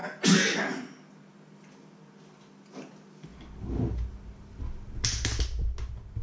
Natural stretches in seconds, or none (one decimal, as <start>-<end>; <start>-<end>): 0.0-6.2